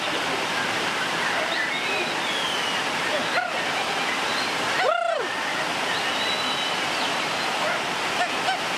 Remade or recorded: recorded